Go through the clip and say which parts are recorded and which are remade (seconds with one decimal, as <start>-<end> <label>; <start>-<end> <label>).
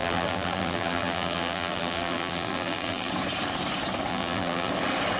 0.0-3.1 remade; 3.1-4.1 recorded; 4.1-4.7 remade; 4.7-5.2 recorded